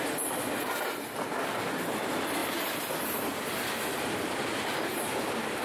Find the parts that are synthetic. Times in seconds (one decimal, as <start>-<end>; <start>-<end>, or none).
none